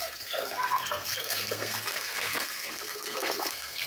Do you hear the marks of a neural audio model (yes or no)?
yes